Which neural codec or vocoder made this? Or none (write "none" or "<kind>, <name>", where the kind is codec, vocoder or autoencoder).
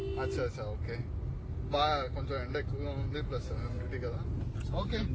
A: none